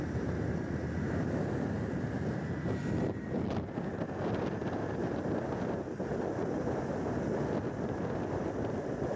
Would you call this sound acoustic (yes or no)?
yes